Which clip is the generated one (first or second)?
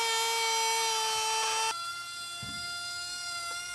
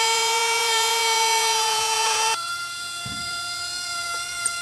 second